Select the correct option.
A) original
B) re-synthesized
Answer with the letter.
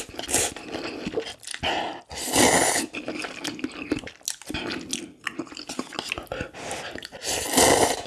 A